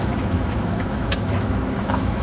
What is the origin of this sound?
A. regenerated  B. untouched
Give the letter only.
A